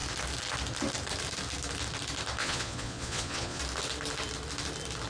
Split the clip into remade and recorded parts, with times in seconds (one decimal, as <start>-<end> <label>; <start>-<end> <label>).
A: 0.0-2.4 recorded; 2.4-3.6 remade; 3.6-5.1 recorded